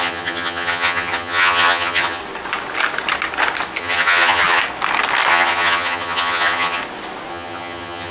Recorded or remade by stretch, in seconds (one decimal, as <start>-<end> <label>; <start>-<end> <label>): 0.0-2.2 remade; 2.2-3.8 recorded; 3.8-4.6 remade; 4.6-5.3 recorded; 5.3-6.8 remade; 6.8-7.3 recorded; 7.3-8.1 remade